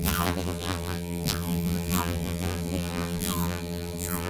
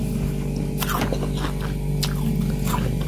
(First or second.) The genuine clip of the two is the second